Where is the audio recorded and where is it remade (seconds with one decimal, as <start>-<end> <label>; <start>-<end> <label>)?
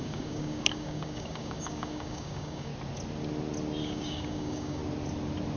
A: 0.0-2.7 remade; 2.7-3.8 recorded; 3.8-4.8 remade; 4.8-5.6 recorded